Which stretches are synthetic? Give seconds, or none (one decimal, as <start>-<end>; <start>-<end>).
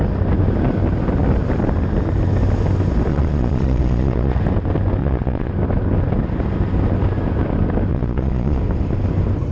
3.1-4.4; 5.0-5.5; 7.9-8.6